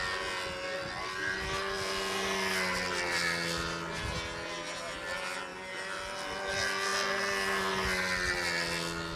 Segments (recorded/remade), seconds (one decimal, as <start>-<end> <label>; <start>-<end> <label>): 0.0-9.2 recorded